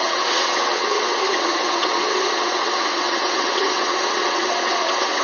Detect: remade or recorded remade